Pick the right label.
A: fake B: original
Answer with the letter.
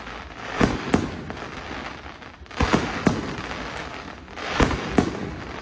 B